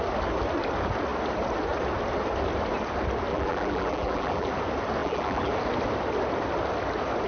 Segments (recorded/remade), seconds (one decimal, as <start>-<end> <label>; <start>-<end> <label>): 0.0-3.3 recorded; 3.3-4.5 remade; 4.5-5.0 recorded; 5.0-5.5 remade; 5.5-7.3 recorded